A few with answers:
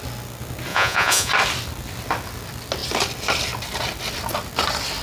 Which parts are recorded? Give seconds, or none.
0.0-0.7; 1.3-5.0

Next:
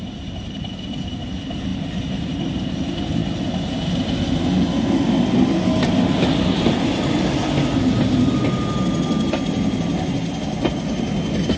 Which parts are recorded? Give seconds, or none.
0.0-11.6

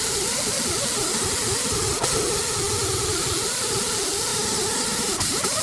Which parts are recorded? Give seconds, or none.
0.0-4.3

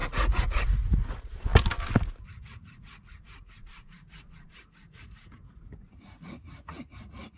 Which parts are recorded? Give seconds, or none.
1.5-2.4

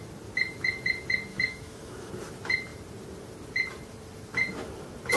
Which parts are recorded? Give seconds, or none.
0.0-1.3; 2.1-5.2